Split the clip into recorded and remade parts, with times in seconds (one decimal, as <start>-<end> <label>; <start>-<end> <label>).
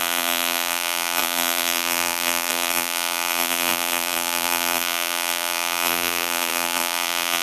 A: 0.0-7.4 remade